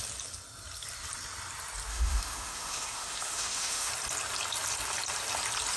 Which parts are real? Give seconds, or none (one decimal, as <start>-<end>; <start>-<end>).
0.0-1.9; 3.9-5.8